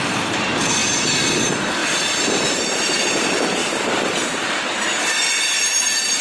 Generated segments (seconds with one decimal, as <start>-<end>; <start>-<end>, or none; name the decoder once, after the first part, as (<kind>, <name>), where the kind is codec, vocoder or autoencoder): 0.0-6.2 (vocoder, BigVGAN v2)